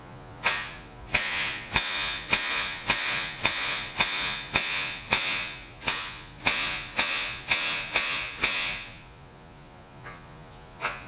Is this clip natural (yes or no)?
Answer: no